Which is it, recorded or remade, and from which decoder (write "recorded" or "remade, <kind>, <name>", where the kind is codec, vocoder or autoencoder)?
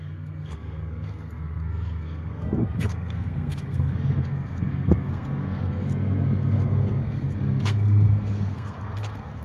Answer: remade, codec, SNAC